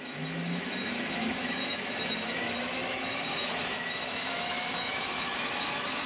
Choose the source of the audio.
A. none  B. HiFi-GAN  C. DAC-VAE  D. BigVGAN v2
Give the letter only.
C